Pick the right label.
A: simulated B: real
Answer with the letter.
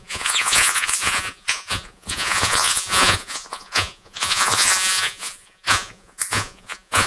A